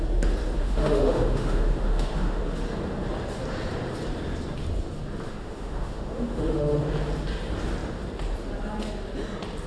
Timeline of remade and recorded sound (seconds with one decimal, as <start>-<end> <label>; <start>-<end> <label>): 0.0-0.6 recorded; 0.6-2.4 remade; 2.4-5.3 recorded; 5.3-6.8 remade; 6.8-9.7 recorded